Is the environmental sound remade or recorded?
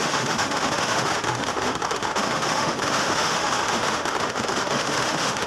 remade